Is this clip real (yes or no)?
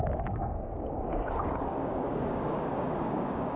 no